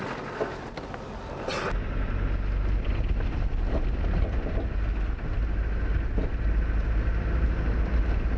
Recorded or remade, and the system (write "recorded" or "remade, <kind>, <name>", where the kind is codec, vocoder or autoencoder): recorded